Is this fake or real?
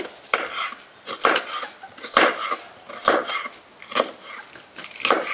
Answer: real